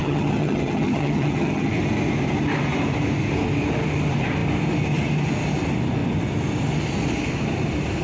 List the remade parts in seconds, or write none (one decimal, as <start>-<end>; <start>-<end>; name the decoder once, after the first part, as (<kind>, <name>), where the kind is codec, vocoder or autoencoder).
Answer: 0.0-1.7 (vocoder, HiFi-GAN)